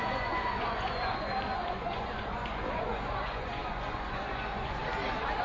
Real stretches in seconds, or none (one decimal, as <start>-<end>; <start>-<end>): 4.8-5.4

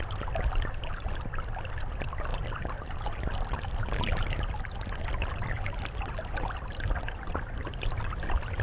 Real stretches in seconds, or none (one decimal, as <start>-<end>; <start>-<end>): 0.0-8.6

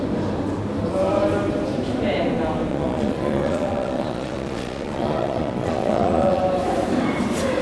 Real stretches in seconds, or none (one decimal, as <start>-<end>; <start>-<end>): 0.0-2.7; 6.4-7.6

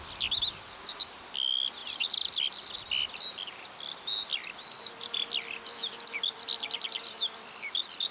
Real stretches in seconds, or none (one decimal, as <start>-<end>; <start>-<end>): 0.0-8.1

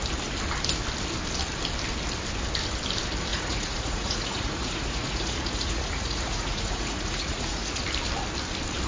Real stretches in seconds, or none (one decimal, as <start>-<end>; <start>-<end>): 0.0-3.3; 7.8-8.9

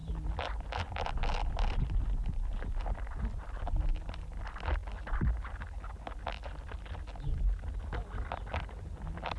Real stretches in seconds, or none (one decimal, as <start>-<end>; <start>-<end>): 0.0-9.4

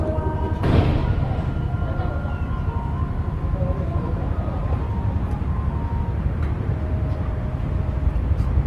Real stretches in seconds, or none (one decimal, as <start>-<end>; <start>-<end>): 1.0-6.0

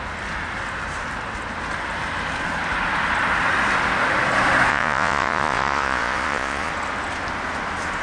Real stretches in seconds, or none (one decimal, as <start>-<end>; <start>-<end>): 0.0-4.7; 6.7-8.0